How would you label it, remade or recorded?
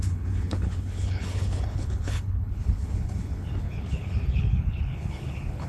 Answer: remade